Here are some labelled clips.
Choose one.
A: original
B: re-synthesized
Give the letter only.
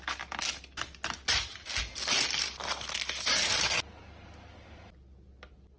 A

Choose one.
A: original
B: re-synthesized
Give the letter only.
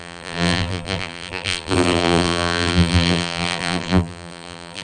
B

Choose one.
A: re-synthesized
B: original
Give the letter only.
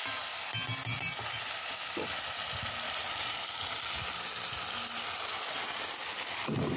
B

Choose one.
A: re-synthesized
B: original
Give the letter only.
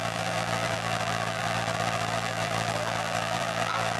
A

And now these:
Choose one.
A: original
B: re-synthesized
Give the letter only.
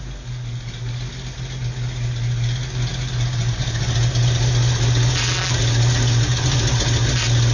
A